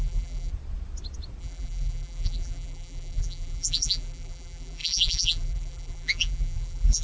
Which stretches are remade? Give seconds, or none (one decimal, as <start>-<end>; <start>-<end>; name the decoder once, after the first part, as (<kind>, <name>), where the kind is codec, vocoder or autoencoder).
0.0-0.5 (vocoder, BigVGAN v2); 1.4-7.0